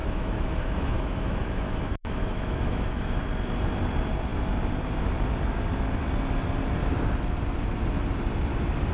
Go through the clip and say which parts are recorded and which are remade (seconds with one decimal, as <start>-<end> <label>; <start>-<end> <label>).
0.0-3.2 remade; 3.2-8.9 recorded